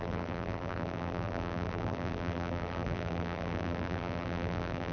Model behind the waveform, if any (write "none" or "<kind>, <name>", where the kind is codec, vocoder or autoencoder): vocoder, BigVGAN v2